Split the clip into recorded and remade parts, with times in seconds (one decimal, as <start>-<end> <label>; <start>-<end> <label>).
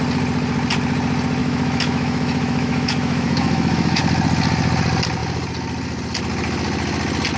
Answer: 0.0-1.4 recorded; 1.4-4.0 remade; 4.0-7.4 recorded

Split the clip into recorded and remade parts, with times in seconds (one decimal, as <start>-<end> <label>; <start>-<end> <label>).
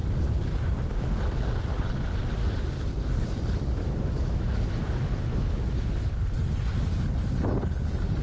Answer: 0.0-3.8 recorded; 3.8-6.2 remade; 6.2-8.2 recorded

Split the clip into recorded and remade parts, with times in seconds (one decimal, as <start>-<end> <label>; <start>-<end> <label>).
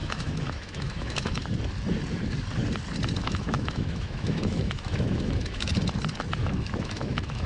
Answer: 0.0-1.4 remade; 1.4-3.2 recorded; 3.2-5.7 remade; 5.7-6.4 recorded; 6.4-7.5 remade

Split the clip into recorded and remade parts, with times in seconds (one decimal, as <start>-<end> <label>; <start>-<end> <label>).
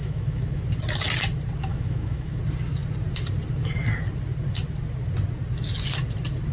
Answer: 0.0-0.6 remade; 0.6-1.7 recorded; 1.7-2.4 remade; 2.4-6.5 recorded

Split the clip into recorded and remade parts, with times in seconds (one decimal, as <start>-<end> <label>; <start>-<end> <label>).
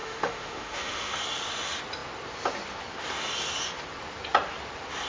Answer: 0.0-1.2 remade; 1.2-5.1 recorded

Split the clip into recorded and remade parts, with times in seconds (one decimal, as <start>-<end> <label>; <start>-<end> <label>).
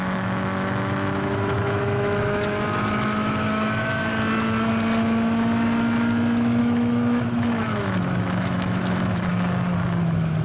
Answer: 0.0-4.1 remade; 4.1-6.6 recorded; 6.6-9.3 remade; 9.3-10.0 recorded; 10.0-10.4 remade